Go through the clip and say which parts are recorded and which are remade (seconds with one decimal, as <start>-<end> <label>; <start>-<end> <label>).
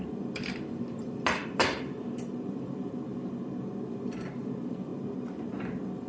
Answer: 0.0-3.1 remade; 3.1-3.9 recorded; 3.9-4.9 remade; 4.9-5.5 recorded; 5.5-6.1 remade